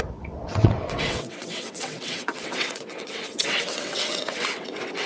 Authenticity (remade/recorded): remade